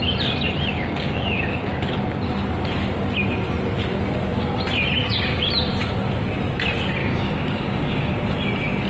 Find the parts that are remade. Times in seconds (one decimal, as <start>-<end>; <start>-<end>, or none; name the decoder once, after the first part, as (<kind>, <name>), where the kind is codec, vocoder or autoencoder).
0.7-1.7 (codec, DAC); 5.0-5.5; 7.0-8.1